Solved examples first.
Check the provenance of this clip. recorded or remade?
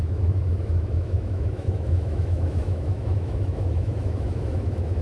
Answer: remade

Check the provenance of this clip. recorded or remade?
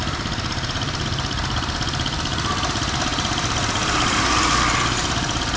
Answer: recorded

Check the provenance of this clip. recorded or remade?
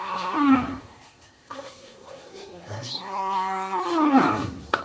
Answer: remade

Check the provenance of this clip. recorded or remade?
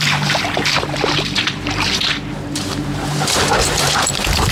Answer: remade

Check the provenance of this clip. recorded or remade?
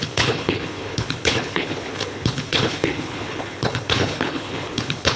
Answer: remade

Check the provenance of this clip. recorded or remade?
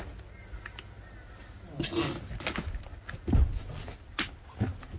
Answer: recorded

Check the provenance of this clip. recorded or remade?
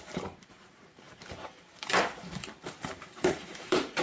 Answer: remade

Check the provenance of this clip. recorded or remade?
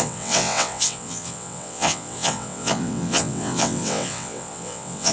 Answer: remade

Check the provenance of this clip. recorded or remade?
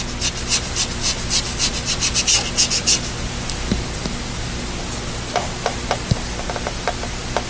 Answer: recorded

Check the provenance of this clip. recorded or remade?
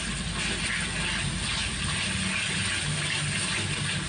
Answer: recorded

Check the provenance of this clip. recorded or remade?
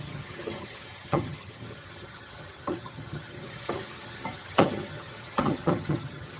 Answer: remade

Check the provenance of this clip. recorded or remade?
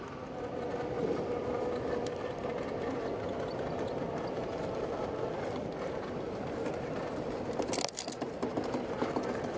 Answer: recorded